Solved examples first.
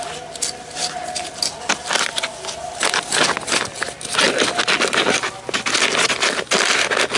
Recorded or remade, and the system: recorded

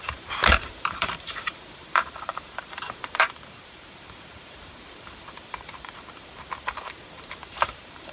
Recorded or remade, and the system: remade, vocoder, BigVGAN v2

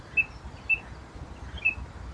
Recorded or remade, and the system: recorded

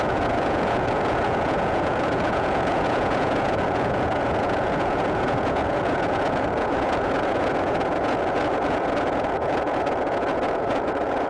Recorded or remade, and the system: remade, vocoder, Vocos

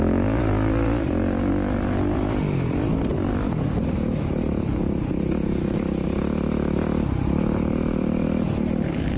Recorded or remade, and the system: remade, vocoder, BigVGAN v2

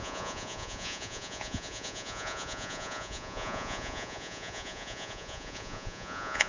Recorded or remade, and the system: remade, vocoder, Vocos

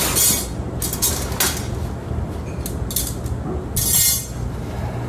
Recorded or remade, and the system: recorded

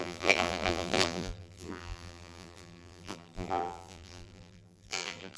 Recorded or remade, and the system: remade, vocoder, BigVGAN v2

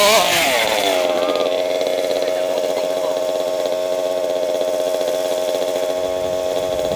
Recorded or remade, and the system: recorded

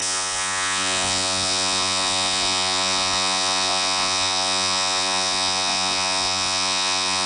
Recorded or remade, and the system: remade, vocoder, Vocos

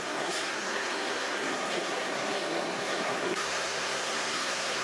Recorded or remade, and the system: remade, codec, SNAC